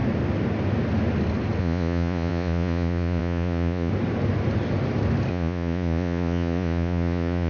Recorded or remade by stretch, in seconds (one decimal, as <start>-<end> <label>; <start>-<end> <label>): 0.0-1.6 recorded; 1.6-3.9 remade; 3.9-5.3 recorded; 5.3-7.5 remade